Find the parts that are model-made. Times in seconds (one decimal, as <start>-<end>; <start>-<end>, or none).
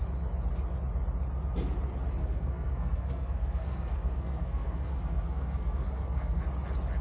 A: 2.2-6.4